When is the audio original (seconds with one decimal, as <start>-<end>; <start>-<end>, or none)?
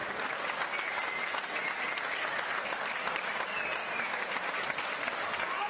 0.0-5.7